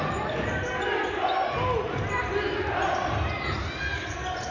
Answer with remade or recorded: recorded